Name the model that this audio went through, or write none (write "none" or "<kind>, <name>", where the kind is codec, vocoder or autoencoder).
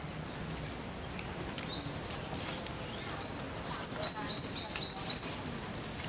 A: none